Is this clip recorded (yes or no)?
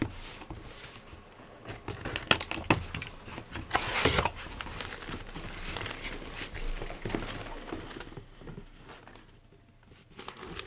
yes